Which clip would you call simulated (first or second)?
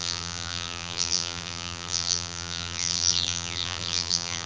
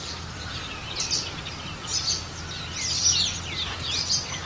first